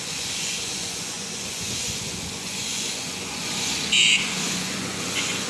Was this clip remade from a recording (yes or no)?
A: yes